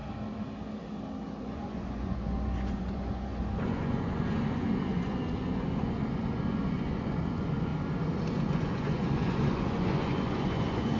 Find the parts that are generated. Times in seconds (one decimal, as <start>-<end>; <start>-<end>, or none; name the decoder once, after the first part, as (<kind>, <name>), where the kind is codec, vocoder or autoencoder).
1.4-7.7 (vocoder, Vocos); 8.3-11.0

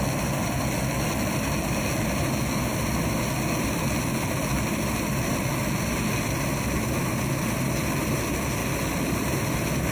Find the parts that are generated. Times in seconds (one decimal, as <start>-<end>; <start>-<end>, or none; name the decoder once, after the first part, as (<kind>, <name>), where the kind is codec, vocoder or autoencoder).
none

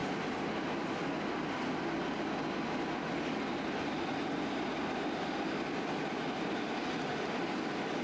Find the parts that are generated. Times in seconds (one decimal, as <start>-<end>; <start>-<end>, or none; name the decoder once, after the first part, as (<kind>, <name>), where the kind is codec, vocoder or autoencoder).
none

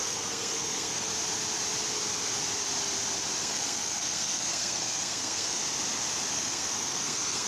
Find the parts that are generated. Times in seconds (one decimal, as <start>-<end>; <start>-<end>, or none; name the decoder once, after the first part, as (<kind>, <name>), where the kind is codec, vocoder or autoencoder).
0.0-1.1 (codec, SNAC); 3.4-5.6; 6.3-7.5

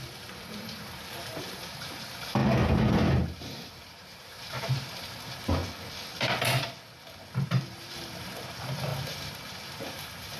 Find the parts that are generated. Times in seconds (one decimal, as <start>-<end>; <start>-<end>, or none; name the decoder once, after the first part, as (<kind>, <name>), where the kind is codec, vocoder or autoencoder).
0.0-5.6 (vocoder, BigVGAN v2); 7.3-10.4

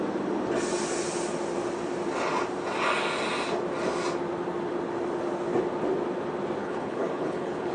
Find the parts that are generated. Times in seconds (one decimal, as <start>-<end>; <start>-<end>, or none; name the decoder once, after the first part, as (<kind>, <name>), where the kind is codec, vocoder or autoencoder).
6.6-7.7 (codec, HILCodec)